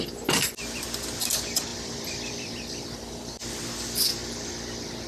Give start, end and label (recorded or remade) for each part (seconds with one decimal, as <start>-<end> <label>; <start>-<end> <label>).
0.0-1.7 recorded; 1.7-3.5 remade; 3.5-5.1 recorded